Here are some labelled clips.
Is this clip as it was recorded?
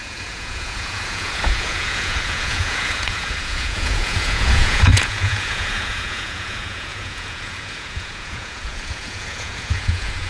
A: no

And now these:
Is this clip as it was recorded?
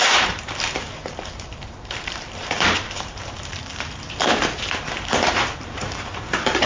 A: no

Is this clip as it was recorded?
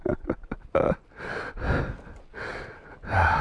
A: yes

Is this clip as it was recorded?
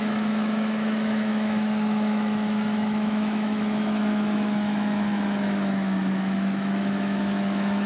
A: no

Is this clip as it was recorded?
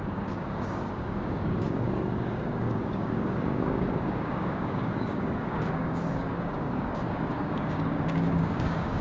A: no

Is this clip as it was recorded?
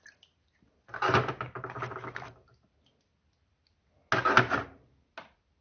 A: yes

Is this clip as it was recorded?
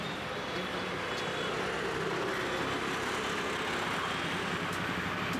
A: yes